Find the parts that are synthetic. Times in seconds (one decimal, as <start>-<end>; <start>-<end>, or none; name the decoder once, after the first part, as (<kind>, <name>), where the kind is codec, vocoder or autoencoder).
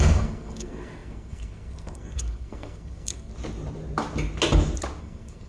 0.0-3.3 (codec, SNAC); 5.0-5.5